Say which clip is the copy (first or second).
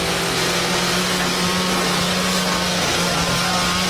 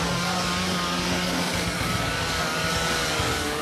second